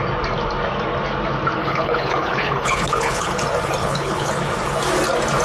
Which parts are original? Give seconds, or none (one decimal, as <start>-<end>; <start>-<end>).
0.0-1.6; 3.4-3.8; 4.3-5.4